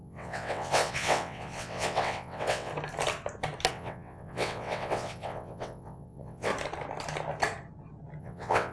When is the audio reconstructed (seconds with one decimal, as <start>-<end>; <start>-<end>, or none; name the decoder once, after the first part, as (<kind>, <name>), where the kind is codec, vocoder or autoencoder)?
0.0-2.7 (vocoder, WaveNeXt); 3.7-6.5; 8.2-8.7